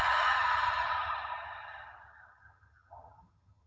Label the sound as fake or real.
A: fake